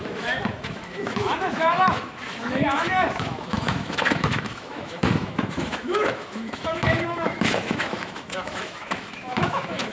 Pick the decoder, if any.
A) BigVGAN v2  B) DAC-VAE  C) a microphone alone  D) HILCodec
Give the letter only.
B